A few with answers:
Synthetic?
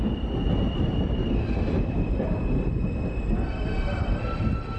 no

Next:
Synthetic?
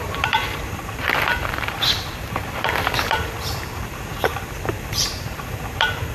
yes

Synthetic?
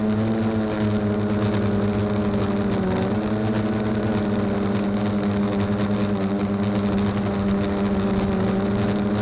no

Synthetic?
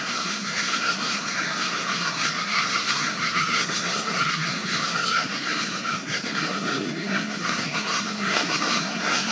yes